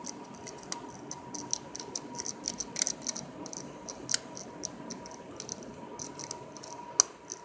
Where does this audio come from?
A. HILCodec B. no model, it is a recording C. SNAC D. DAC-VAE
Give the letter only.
B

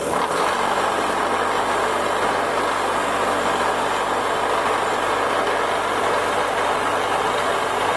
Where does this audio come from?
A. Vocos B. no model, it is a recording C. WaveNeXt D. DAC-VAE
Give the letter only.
B